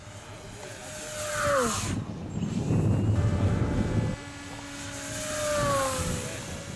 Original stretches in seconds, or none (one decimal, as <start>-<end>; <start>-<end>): 0.0-6.8